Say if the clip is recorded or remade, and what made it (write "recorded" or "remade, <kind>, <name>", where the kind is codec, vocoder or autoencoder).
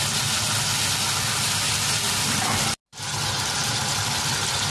recorded